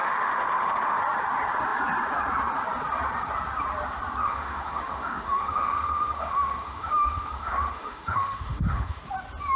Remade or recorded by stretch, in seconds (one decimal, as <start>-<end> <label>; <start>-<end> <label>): 0.0-1.0 remade; 1.0-4.2 recorded; 4.2-9.0 remade; 9.0-9.6 recorded